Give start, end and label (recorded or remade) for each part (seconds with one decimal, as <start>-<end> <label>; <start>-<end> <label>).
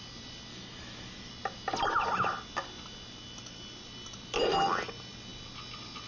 0.0-0.5 recorded; 0.5-1.3 remade; 1.3-6.1 recorded